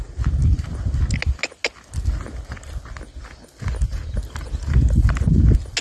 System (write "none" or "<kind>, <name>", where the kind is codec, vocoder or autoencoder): none